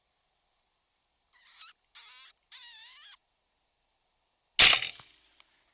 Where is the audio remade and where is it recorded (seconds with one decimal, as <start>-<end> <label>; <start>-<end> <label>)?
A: 0.0-5.7 recorded